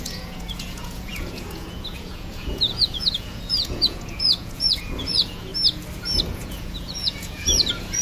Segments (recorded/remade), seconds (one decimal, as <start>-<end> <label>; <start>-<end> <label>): 0.0-5.5 remade; 5.5-6.2 recorded; 6.2-8.0 remade